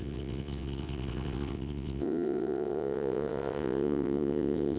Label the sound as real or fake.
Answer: fake